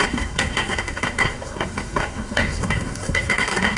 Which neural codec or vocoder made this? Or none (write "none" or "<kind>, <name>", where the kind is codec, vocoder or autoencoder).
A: codec, SNAC